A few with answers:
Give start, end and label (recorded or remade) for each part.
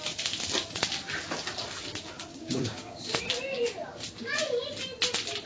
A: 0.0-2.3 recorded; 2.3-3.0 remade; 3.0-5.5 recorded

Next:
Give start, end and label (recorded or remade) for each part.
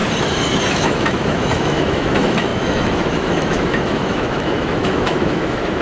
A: 0.0-0.7 recorded; 0.7-5.8 remade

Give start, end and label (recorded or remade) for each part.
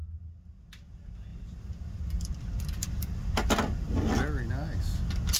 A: 0.0-1.3 recorded; 1.3-4.5 remade; 4.5-5.4 recorded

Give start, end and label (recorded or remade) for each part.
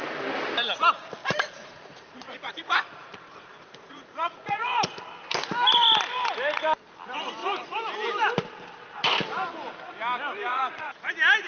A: 0.0-1.2 recorded; 1.2-5.0 remade; 5.0-10.5 recorded; 10.5-11.1 remade; 11.1-11.5 recorded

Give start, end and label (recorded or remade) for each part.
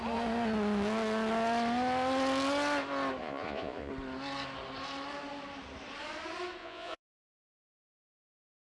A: 0.0-3.2 recorded; 3.2-3.9 remade; 3.9-6.6 recorded; 6.6-8.0 remade; 8.0-8.8 recorded